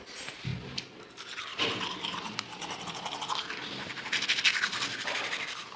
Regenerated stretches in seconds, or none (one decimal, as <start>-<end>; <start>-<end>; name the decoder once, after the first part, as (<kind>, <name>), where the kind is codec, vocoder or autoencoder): none